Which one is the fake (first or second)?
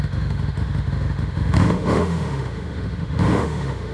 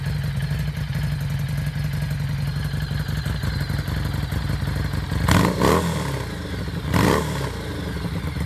first